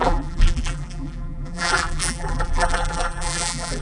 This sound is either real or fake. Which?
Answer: fake